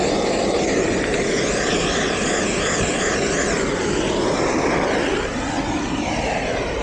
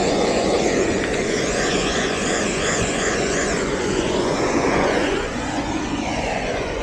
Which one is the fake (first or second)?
second